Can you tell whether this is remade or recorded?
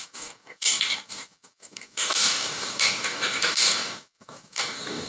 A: remade